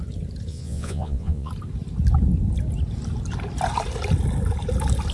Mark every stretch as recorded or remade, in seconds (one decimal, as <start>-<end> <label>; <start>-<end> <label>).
0.0-0.5 recorded; 0.5-1.5 remade; 1.5-5.1 recorded